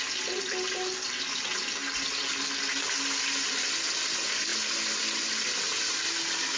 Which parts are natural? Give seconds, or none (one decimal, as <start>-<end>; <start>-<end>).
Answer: 0.0-1.8; 2.4-4.5; 5.9-6.6